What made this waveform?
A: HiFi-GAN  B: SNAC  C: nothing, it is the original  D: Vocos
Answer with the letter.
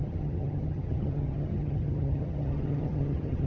A